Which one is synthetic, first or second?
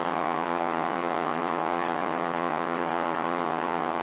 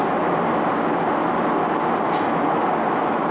first